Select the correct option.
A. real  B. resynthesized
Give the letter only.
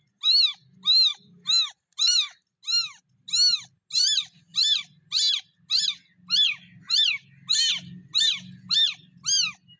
A